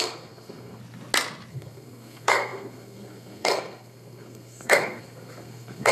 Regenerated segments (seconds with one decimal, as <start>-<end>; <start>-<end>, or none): 0.0-0.8; 1.5-5.9